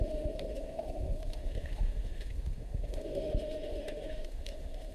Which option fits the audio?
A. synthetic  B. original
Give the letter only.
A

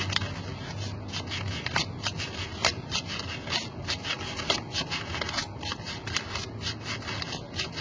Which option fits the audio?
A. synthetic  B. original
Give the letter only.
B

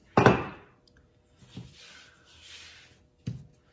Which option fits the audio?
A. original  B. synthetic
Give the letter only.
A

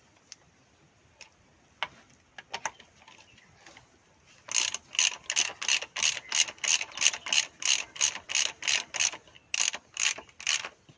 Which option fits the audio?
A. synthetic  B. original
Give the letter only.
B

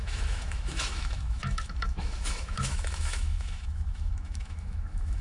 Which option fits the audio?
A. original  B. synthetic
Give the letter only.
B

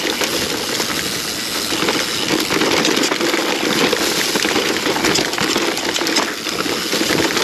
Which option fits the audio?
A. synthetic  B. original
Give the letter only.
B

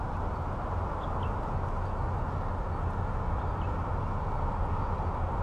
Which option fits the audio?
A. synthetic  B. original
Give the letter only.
B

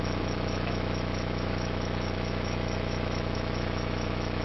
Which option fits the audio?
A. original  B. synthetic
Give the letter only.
B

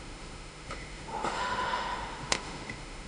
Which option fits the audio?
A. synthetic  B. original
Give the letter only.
A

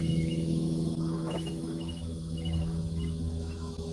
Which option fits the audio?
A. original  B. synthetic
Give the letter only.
B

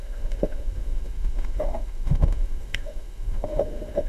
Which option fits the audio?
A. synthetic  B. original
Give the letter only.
A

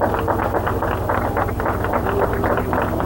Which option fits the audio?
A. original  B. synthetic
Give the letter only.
A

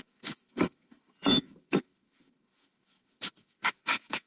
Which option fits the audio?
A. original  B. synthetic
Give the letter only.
B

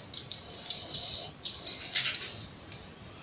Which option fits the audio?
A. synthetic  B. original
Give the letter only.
B